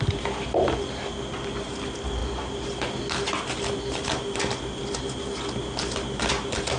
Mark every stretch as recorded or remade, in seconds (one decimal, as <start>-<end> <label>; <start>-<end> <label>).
0.0-6.8 recorded